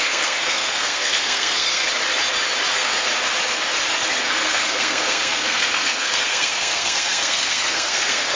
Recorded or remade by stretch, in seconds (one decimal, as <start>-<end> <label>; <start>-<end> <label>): 0.0-1.9 remade; 1.9-2.7 recorded; 2.7-3.1 remade; 3.1-4.2 recorded; 4.2-8.4 remade